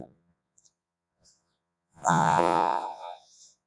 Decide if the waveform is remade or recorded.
remade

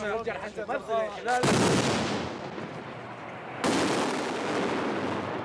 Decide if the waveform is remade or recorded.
recorded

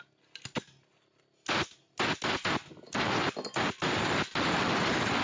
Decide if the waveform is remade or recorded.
recorded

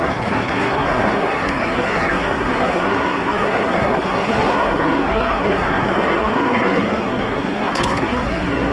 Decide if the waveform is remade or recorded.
remade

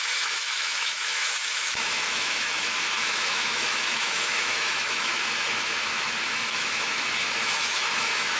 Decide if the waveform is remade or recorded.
remade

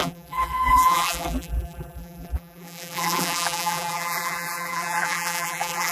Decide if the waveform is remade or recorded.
remade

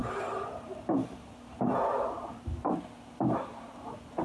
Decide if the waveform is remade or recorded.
remade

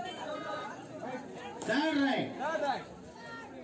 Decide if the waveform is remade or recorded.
recorded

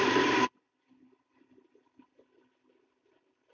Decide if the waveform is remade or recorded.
remade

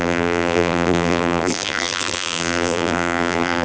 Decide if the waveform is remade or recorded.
remade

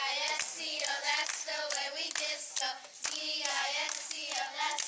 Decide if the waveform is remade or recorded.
recorded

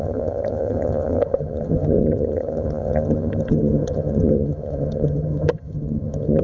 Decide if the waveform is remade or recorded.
remade